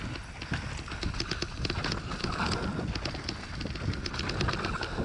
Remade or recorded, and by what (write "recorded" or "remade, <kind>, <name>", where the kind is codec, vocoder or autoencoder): recorded